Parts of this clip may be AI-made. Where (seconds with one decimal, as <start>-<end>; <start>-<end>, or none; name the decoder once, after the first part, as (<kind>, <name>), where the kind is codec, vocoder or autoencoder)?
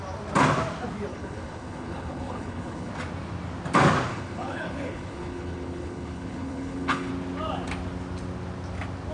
1.1-2.9 (codec, HILCodec); 4.1-7.1